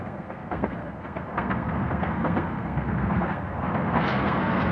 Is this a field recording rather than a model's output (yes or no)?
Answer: no